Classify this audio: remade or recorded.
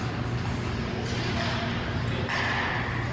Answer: recorded